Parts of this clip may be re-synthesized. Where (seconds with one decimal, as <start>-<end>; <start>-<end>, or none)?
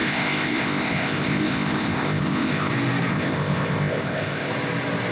0.0-2.7; 3.1-4.5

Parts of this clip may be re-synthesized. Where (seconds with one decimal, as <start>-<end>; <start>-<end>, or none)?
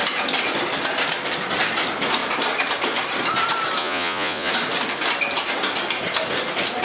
3.8-4.5